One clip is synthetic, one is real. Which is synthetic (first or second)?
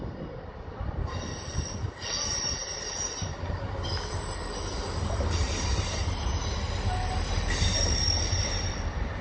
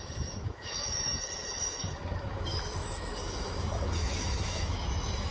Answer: second